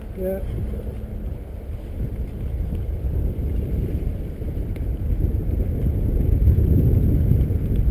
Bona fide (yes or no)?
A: yes